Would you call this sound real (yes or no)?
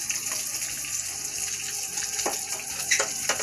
yes